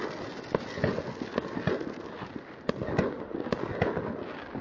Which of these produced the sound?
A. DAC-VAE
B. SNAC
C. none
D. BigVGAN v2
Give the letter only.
C